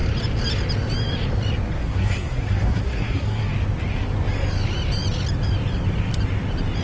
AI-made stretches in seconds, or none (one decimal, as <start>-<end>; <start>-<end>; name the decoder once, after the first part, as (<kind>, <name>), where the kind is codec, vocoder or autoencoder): 1.8-3.5 (codec, SNAC)